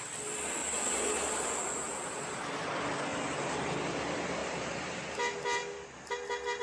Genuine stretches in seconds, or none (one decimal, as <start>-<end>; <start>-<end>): 0.0-0.6; 2.7-3.1; 3.7-4.4; 5.0-6.6